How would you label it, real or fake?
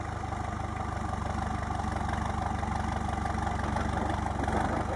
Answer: real